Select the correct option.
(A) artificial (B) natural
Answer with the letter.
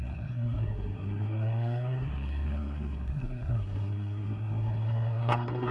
A